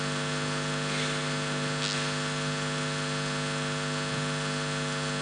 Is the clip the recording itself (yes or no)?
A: yes